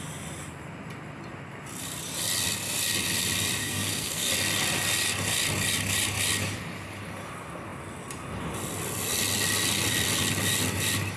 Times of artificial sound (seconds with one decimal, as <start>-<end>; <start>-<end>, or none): 3.6-4.3